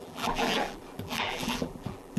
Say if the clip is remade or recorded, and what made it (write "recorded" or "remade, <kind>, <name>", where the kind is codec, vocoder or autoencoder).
remade, vocoder, BigVGAN v2